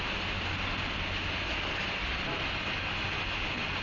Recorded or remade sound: recorded